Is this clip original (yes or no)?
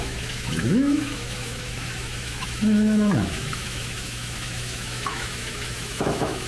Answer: no